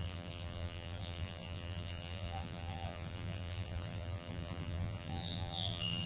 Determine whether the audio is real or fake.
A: fake